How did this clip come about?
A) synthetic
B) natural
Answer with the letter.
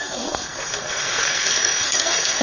A